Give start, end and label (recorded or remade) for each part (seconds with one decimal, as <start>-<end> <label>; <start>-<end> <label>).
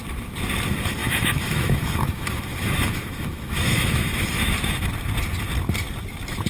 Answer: 0.0-1.0 recorded; 1.0-4.9 remade; 4.9-6.5 recorded